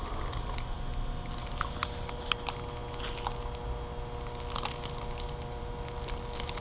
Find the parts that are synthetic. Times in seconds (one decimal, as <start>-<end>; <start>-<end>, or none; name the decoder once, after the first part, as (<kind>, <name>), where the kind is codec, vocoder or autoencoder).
none